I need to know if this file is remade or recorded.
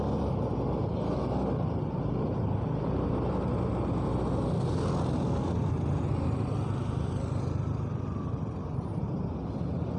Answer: recorded